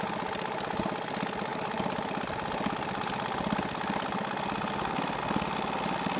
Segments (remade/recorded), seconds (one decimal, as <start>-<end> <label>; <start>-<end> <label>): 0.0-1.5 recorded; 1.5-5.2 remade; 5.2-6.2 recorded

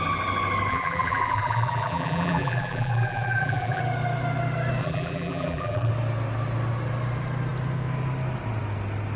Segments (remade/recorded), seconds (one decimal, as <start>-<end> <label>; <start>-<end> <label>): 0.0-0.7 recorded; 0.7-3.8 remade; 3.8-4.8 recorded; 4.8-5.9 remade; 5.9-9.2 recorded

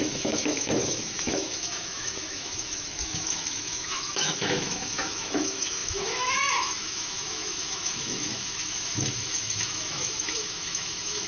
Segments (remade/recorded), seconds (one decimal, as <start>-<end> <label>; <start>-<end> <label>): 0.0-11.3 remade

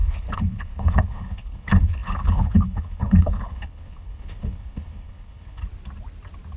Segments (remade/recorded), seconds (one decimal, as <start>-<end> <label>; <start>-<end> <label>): 0.0-5.6 remade; 5.6-6.6 recorded

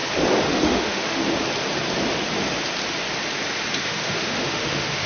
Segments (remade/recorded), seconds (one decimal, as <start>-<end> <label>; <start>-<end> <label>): 0.0-0.5 recorded; 0.5-1.2 remade; 1.2-3.8 recorded; 3.8-5.1 remade

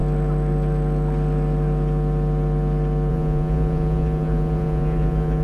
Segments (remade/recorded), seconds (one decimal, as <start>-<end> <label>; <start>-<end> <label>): 0.0-3.1 recorded; 3.1-5.4 remade

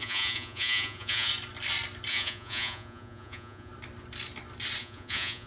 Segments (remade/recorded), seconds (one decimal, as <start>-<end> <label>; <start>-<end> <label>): 0.0-1.3 remade; 1.3-2.1 recorded; 2.1-3.7 remade; 3.7-4.8 recorded; 4.8-5.5 remade